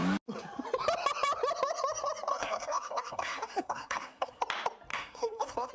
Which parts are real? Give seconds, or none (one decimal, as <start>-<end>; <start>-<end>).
0.0-2.3; 4.4-4.9